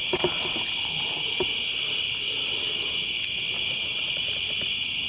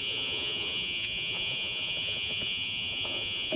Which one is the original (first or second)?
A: first